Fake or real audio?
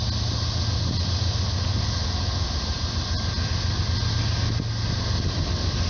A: real